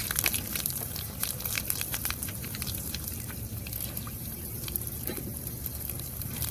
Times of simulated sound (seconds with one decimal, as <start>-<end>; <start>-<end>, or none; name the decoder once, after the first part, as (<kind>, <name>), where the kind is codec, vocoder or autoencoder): 0.0-3.1 (vocoder, BigVGAN v2); 3.5-6.5